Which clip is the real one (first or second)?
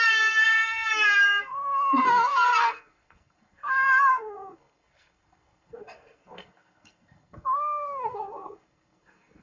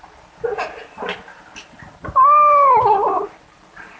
second